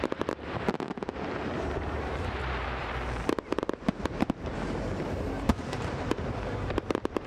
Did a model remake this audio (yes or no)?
yes